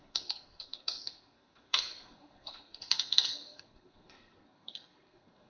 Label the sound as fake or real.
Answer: fake